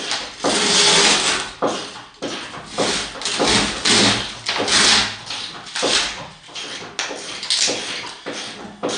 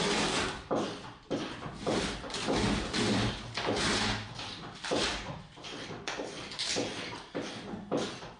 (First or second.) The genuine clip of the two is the first